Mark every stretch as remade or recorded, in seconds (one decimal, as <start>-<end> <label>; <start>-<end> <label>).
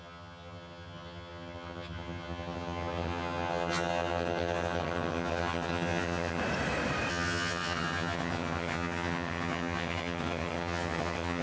0.0-6.4 remade; 6.4-7.1 recorded; 7.1-11.4 remade